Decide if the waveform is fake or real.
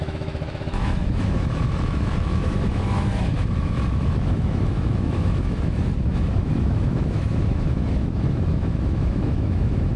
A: fake